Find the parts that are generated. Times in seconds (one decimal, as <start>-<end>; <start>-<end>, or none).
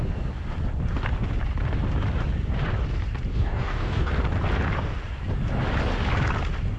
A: 3.3-4.1